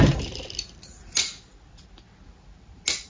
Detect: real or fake real